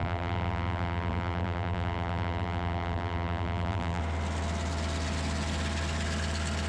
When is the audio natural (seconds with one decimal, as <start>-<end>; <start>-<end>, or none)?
4.0-6.7